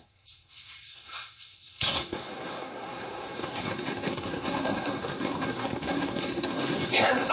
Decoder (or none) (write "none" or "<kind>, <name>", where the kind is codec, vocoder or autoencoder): codec, SNAC